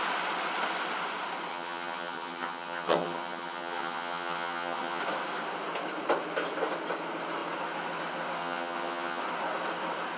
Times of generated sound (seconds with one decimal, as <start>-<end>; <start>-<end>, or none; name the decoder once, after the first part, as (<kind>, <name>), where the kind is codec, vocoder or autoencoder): 1.5-5.0 (vocoder, HiFi-GAN); 8.4-9.2